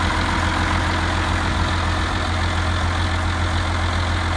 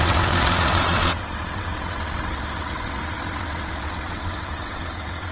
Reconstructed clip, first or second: second